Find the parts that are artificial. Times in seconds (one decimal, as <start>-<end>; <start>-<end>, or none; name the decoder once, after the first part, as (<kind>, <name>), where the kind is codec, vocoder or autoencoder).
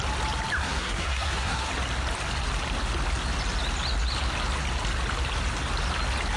0.6-1.7 (codec, SNAC)